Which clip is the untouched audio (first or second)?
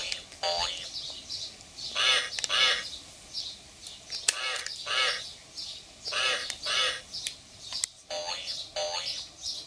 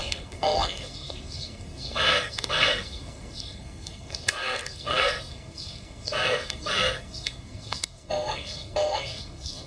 first